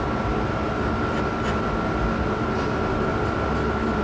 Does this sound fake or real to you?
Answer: real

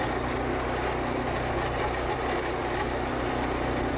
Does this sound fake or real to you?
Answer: real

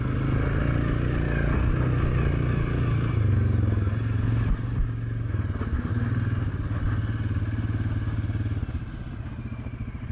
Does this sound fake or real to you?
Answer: real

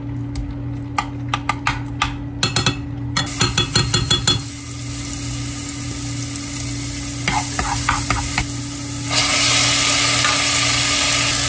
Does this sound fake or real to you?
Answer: real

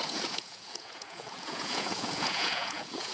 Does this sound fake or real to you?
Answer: fake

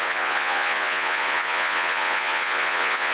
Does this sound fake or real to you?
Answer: fake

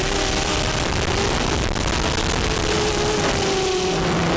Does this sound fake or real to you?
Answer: real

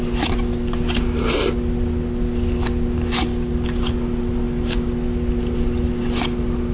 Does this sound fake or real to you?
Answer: real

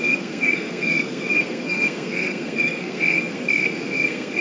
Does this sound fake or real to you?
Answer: fake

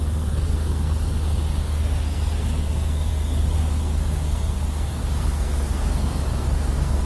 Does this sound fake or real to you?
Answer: fake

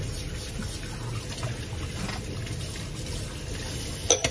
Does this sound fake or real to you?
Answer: real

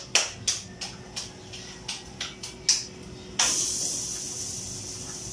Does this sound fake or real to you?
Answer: real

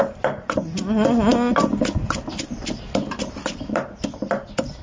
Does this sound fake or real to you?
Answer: real